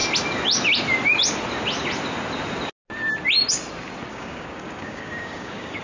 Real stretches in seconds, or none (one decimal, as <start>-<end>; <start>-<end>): 0.0-4.1